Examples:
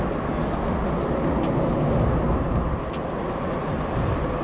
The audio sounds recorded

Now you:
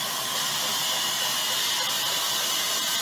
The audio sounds recorded